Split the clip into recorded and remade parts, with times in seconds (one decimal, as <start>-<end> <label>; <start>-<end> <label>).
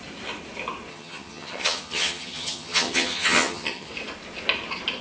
0.0-0.9 recorded; 0.9-3.9 remade; 3.9-5.0 recorded